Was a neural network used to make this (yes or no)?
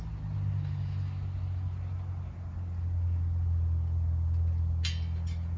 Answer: no